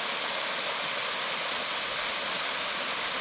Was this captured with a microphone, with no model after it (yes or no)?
yes